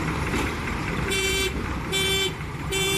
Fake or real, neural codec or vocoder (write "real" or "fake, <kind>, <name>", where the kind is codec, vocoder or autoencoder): fake, vocoder, BigVGAN v2